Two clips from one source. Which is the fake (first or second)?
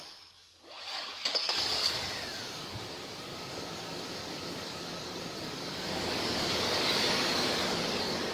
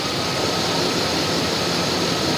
first